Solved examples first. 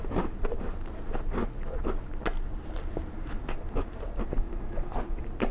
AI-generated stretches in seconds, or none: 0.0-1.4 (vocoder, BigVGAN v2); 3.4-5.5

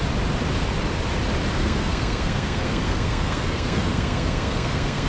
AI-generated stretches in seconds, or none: 1.6-5.1 (codec, SNAC)

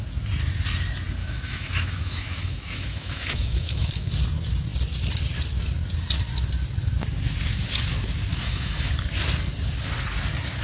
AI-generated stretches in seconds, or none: 1.2-4.1 (autoencoder, DAC-VAE); 8.3-8.9

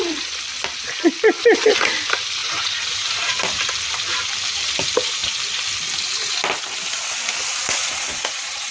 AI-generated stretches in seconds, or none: 2.4-3.4 (vocoder, Vocos); 7.8-8.7

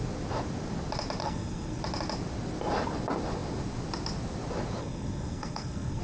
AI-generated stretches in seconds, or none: 1.2-1.8 (codec, SNAC); 4.8-6.0

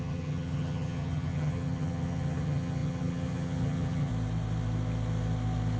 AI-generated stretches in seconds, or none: 0.0-4.1 (vocoder, HiFi-GAN)

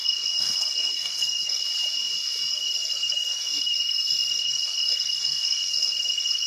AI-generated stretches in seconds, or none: 0.0-1.6 (codec, SNAC); 2.5-6.5